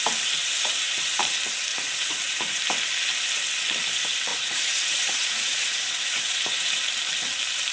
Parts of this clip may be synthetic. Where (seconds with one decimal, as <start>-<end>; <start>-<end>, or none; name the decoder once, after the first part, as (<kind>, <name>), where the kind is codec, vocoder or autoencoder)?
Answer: 0.4-1.2 (vocoder, Vocos); 1.7-2.6; 4.3-6.7